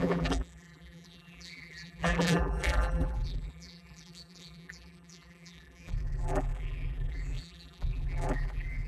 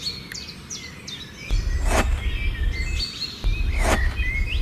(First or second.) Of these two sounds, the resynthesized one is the first